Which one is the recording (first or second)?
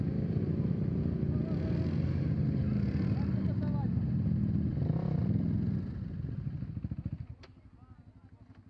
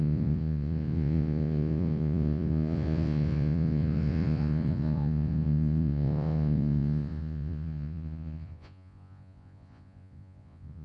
first